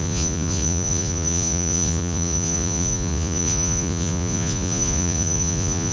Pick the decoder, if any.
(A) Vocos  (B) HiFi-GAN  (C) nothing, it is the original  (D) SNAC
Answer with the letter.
A